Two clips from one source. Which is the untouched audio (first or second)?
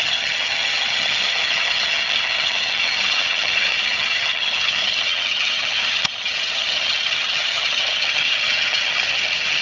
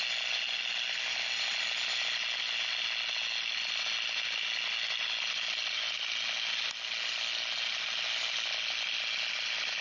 second